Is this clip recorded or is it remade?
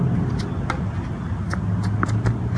recorded